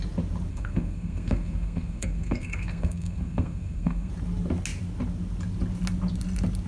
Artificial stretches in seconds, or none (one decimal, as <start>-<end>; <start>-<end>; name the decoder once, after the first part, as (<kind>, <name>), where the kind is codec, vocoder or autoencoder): 0.5-4.1 (codec, SNAC)